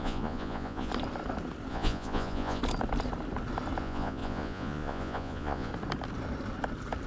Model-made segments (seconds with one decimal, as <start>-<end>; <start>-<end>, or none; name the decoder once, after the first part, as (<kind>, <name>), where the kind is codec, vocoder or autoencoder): 0.0-0.9 (vocoder, Vocos); 1.7-2.6; 3.8-5.7